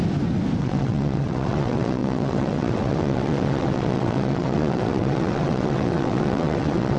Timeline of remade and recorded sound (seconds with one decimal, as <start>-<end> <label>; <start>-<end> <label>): 0.0-0.6 recorded; 0.6-7.0 remade